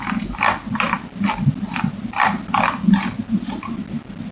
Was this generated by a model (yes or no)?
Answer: no